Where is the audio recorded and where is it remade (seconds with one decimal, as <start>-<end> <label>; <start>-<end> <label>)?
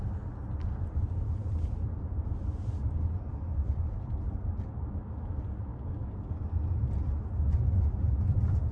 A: 0.0-5.7 recorded; 5.7-6.3 remade; 6.3-8.7 recorded